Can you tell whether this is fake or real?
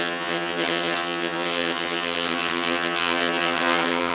fake